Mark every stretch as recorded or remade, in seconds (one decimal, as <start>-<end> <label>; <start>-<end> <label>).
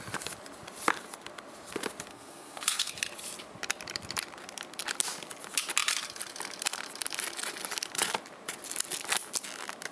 0.0-2.1 recorded; 2.1-2.9 remade; 2.9-9.9 recorded